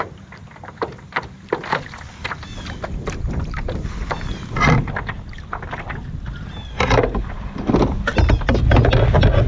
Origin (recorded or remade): recorded